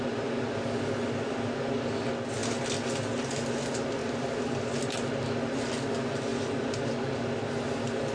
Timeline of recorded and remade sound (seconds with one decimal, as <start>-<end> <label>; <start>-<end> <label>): 0.0-4.0 recorded; 4.0-4.9 remade; 4.9-6.3 recorded; 6.3-6.9 remade; 6.9-8.1 recorded